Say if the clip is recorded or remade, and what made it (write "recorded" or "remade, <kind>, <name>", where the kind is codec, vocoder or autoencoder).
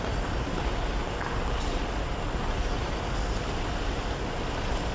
recorded